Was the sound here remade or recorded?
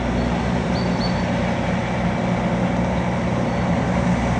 recorded